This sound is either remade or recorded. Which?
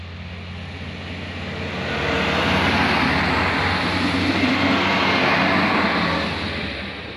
recorded